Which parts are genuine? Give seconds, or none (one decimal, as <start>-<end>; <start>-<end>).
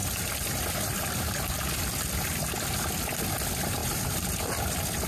0.0-3.8; 4.5-5.1